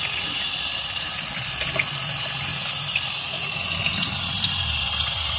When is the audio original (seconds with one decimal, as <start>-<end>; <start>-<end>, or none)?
0.0-5.4